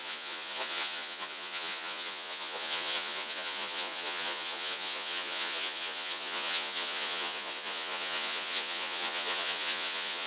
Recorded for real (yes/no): no